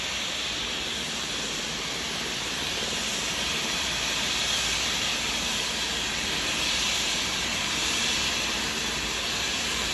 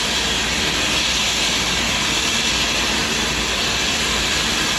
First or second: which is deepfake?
first